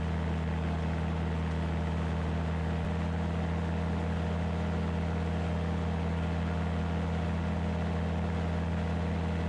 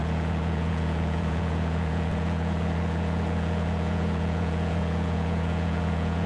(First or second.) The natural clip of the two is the first